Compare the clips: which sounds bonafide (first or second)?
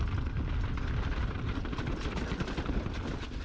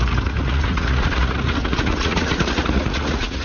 first